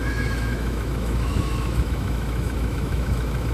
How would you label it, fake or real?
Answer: fake